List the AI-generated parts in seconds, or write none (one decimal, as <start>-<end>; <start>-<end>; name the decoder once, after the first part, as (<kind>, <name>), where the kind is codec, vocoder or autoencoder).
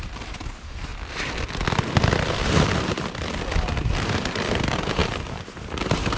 0.0-0.9 (vocoder, BigVGAN v2); 4.6-6.2